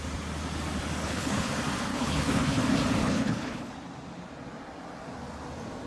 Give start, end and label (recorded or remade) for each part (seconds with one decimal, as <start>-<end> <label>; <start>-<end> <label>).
0.0-1.0 recorded; 1.0-1.5 remade; 1.5-1.9 recorded; 1.9-2.6 remade; 2.6-3.0 recorded; 3.0-3.7 remade; 3.7-5.9 recorded